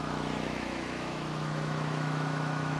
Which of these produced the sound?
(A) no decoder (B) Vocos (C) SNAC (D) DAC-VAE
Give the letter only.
D